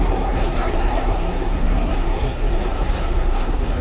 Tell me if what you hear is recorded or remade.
remade